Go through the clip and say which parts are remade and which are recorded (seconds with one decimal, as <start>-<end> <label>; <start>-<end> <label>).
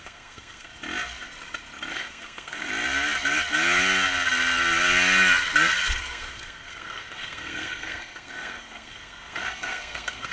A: 0.0-0.7 remade; 0.7-1.9 recorded; 1.9-2.7 remade; 2.7-6.0 recorded; 6.0-10.3 remade